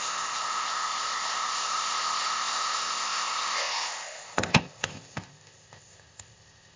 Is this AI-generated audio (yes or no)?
yes